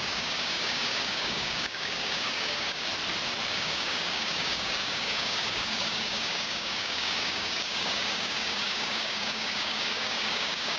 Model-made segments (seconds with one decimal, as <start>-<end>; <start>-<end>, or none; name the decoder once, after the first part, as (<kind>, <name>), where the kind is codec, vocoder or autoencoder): 0.0-2.9 (codec, DAC); 3.4-10.8